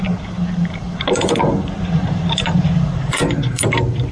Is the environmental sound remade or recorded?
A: remade